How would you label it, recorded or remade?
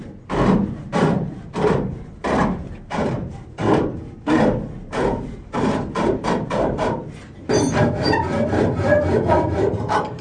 remade